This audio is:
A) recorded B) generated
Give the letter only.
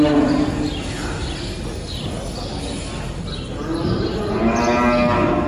A